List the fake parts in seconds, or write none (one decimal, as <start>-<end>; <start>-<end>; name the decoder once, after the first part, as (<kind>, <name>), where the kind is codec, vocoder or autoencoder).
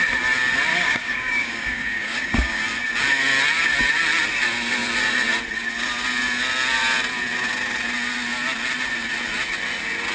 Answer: 0.7-2.6 (codec, DAC)